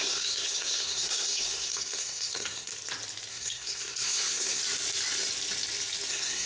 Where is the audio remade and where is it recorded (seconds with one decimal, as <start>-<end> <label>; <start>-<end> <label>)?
0.0-2.7 remade; 2.7-3.3 recorded; 3.3-4.6 remade; 4.6-6.1 recorded; 6.1-6.5 remade